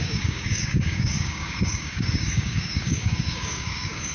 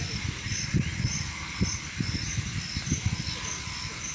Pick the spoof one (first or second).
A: first